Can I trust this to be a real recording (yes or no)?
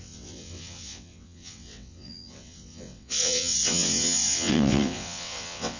no